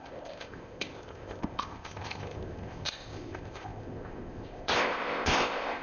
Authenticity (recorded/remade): remade